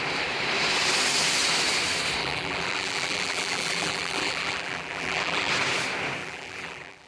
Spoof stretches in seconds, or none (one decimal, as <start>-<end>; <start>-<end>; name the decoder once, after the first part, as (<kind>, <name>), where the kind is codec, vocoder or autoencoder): 2.2-5.5 (vocoder, BigVGAN v2); 6.2-7.1